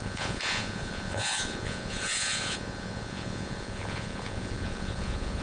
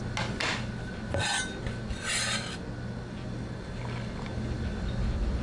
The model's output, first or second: first